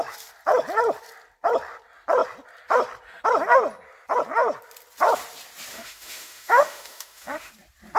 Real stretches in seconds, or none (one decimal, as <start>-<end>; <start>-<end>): 0.0-5.7; 7.5-8.0